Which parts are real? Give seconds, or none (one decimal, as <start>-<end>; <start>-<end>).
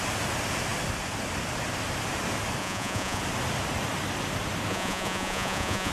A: 0.0-2.6; 3.2-4.7